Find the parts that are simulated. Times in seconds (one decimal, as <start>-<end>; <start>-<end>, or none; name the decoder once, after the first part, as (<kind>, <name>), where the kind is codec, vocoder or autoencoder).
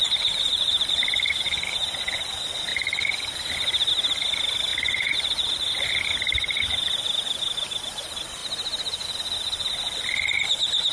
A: 0.0-1.5 (vocoder, BigVGAN v2); 4.7-5.9